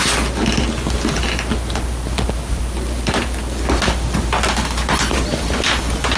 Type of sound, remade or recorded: recorded